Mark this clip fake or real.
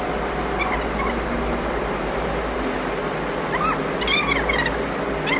real